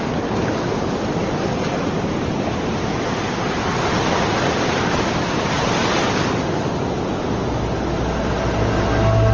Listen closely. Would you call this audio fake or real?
real